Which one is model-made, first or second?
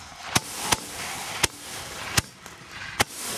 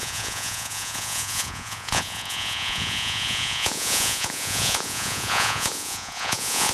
second